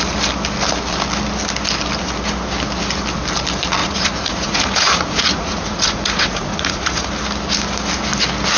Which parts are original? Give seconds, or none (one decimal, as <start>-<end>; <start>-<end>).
0.0-3.8; 7.1-8.6